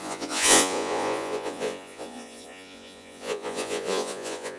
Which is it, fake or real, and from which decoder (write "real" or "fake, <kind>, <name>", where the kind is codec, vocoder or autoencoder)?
fake, vocoder, Vocos